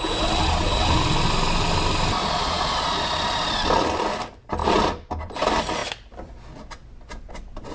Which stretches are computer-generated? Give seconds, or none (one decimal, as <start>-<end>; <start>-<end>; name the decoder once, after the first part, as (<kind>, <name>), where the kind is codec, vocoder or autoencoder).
2.2-3.1 (vocoder, Vocos)

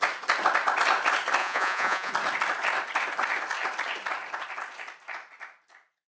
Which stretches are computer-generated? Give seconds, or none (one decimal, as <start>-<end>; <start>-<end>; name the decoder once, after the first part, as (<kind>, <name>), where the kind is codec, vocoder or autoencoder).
1.4-2.1 (vocoder, Vocos)

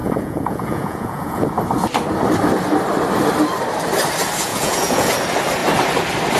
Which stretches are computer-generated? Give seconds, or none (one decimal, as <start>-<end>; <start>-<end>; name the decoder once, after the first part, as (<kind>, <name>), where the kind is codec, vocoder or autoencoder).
0.0-1.5 (vocoder, Vocos); 4.5-5.1

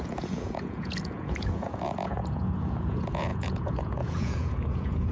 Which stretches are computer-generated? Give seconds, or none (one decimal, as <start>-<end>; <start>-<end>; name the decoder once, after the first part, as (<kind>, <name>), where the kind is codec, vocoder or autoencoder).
0.0-5.1 (vocoder, Vocos)

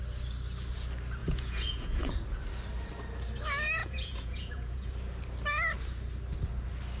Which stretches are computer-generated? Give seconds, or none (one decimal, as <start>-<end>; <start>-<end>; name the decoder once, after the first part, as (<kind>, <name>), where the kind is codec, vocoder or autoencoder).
1.2-2.1 (vocoder, Vocos); 3.8-4.9

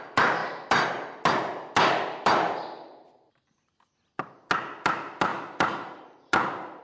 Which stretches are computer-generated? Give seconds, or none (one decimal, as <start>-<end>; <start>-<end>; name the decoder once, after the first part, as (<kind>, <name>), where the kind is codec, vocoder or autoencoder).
none

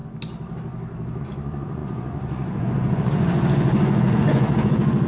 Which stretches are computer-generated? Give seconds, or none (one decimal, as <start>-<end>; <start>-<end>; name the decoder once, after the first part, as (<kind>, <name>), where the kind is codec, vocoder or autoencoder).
1.2-5.1 (vocoder, Vocos)